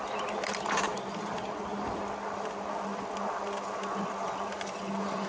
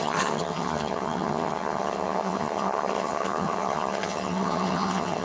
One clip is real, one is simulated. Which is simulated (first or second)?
second